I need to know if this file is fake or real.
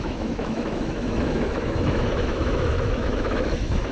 fake